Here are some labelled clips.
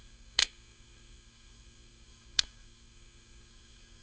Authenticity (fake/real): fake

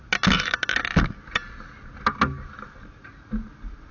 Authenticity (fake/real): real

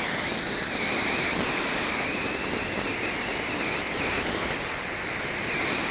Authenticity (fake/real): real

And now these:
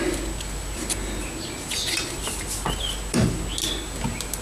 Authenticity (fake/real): real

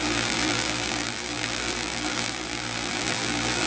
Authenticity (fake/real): fake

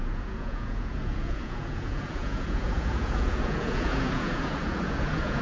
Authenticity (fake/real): fake